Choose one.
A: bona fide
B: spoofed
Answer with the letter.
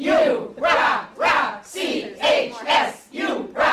A